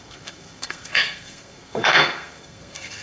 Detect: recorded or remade remade